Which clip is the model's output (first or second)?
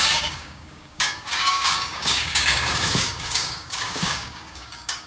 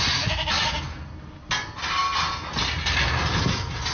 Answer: first